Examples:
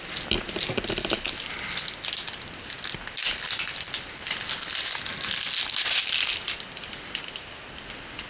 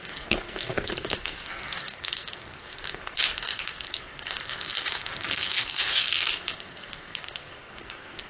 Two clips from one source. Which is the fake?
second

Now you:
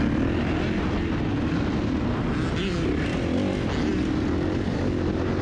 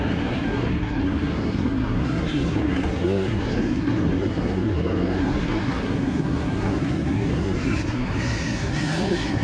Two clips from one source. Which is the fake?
second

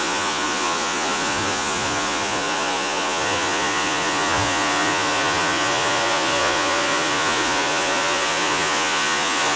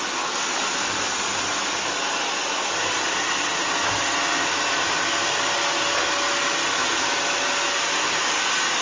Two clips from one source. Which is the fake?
first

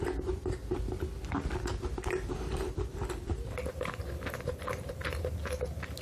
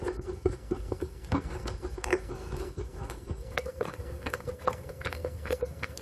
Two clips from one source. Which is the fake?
second